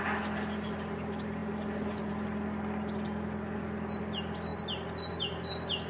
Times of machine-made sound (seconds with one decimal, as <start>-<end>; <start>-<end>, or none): none